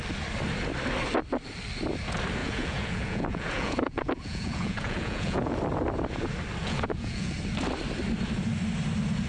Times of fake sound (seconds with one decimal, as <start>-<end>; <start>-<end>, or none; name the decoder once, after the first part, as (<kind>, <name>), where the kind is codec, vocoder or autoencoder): 2.4-5.6 (vocoder, Vocos); 6.6-7.3